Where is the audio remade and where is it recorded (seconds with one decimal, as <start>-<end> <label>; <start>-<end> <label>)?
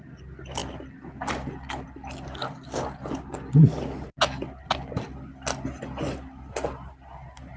0.0-7.6 recorded